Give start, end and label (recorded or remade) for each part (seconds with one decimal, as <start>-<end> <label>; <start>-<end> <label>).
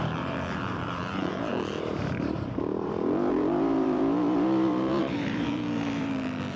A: 0.0-6.6 remade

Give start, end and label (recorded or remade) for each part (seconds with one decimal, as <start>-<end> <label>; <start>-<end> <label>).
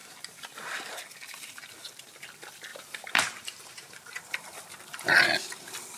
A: 0.0-2.7 recorded; 2.7-4.3 remade; 4.3-6.0 recorded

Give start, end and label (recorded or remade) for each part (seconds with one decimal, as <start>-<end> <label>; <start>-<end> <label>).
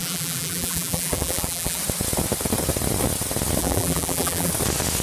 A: 0.0-1.8 remade; 1.8-3.6 recorded; 3.6-4.5 remade; 4.5-5.0 recorded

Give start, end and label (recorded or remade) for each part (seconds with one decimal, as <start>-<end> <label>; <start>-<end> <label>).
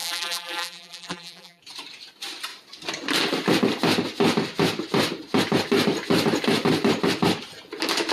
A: 0.0-1.6 remade; 1.6-8.1 recorded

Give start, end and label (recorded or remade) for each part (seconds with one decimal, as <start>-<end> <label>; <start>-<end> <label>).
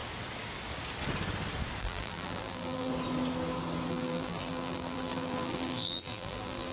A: 0.0-1.8 recorded; 1.8-2.9 remade; 2.9-3.9 recorded; 3.9-6.7 remade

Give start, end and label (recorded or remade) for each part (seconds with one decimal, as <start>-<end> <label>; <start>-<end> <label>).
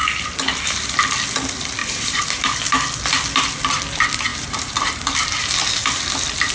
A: 0.0-1.8 recorded; 1.8-2.5 remade; 2.5-4.3 recorded; 4.3-5.5 remade; 5.5-6.5 recorded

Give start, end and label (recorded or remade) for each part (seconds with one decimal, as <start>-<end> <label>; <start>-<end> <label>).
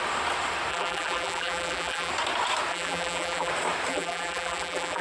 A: 0.0-0.7 recorded; 0.7-2.1 remade; 2.1-2.7 recorded; 2.7-3.5 remade; 3.5-3.9 recorded; 3.9-5.0 remade